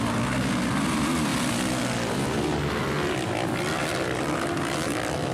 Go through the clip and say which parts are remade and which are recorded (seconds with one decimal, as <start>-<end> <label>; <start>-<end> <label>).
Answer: 0.0-5.3 recorded